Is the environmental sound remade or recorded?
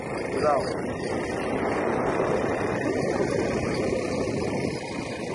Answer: recorded